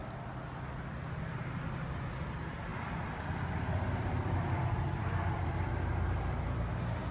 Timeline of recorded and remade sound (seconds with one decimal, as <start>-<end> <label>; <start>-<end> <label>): 0.0-2.7 recorded; 2.7-7.1 remade